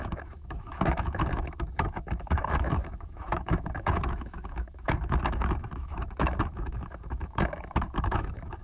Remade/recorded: remade